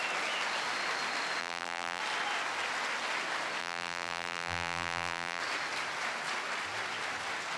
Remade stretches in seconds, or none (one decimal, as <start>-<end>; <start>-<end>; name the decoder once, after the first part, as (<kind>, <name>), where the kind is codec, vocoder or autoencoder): 1.4-2.0 (vocoder, BigVGAN v2); 3.6-5.4